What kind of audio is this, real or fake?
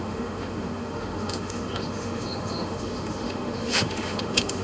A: fake